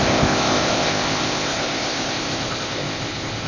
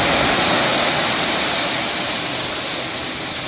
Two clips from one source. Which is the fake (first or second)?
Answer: first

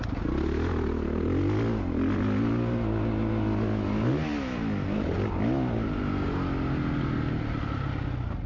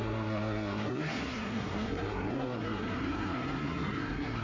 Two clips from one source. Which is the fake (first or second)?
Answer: second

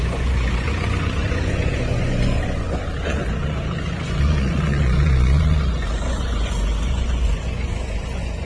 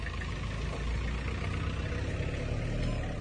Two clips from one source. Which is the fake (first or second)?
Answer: first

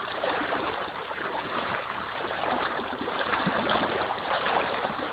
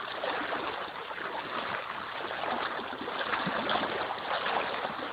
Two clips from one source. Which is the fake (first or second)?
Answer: first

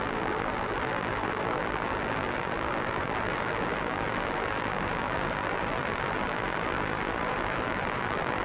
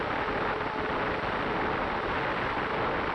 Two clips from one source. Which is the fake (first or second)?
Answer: first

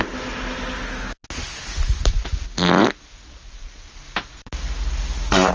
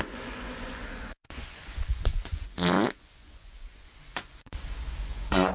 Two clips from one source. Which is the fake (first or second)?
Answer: second